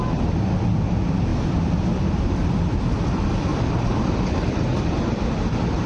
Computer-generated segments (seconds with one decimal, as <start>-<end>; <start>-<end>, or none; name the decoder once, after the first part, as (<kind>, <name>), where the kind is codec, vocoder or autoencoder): 1.3-2.0 (vocoder, BigVGAN v2); 3.5-5.5